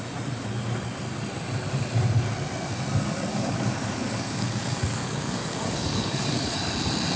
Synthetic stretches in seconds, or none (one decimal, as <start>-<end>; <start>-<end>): 3.3-6.7